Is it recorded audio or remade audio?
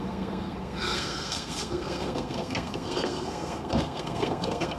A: remade